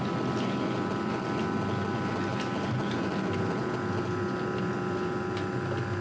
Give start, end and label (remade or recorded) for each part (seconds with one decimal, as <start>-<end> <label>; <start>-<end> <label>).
0.0-6.0 recorded